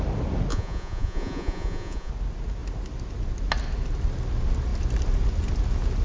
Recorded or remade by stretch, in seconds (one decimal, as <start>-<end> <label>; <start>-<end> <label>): 0.0-0.5 recorded; 0.5-2.1 remade; 2.1-6.0 recorded